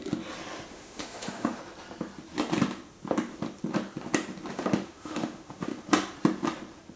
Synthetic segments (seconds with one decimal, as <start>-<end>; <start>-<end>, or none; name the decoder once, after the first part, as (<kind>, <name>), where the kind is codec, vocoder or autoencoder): 0.7-1.6 (autoencoder, DAC-VAE); 4.5-5.7